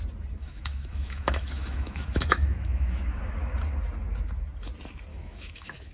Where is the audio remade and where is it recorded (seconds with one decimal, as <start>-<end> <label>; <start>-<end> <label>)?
0.0-0.4 recorded; 0.4-3.2 remade; 3.2-5.1 recorded; 5.1-5.9 remade